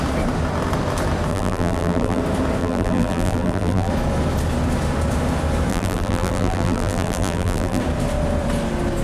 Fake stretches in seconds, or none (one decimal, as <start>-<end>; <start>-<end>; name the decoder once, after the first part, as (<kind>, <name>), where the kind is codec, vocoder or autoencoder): 1.3-2.2 (vocoder, BigVGAN v2); 2.6-3.9; 5.7-7.8